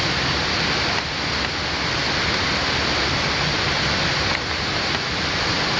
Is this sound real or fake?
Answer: real